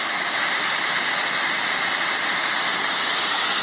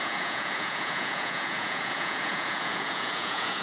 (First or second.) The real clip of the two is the first